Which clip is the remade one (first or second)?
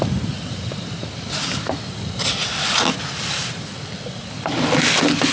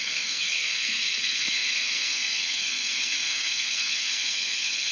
second